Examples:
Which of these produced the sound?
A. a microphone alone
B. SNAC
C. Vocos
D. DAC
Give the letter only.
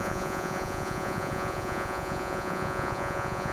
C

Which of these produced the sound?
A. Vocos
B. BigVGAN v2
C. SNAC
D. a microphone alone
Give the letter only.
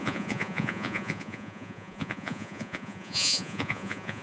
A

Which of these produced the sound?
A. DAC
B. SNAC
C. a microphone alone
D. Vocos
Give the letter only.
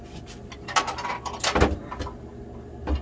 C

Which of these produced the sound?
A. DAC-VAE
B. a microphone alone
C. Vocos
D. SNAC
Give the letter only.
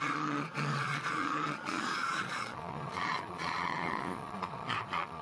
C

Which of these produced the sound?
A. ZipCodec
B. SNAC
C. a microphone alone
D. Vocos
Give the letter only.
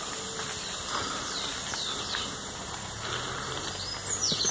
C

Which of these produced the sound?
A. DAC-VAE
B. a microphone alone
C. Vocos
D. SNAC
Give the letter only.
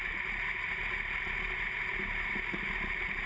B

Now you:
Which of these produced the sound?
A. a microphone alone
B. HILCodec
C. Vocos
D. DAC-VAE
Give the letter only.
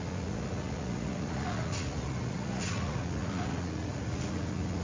C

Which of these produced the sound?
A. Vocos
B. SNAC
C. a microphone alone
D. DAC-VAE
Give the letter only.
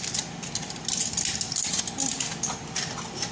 C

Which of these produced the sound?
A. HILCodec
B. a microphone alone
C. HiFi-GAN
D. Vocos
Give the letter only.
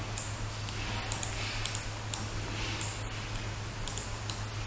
B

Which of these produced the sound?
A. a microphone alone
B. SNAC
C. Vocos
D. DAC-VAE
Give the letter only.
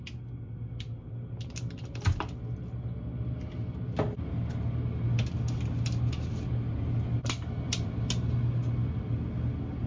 A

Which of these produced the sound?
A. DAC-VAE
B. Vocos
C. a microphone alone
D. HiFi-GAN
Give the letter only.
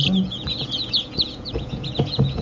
B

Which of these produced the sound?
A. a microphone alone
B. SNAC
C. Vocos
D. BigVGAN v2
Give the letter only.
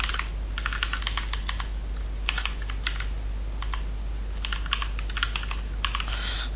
A